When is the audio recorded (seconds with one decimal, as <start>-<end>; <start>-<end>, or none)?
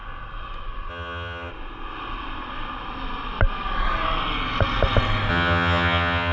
0.0-0.9; 1.5-5.3